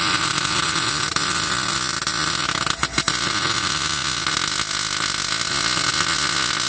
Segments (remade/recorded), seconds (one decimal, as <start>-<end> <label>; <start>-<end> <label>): 0.0-6.7 recorded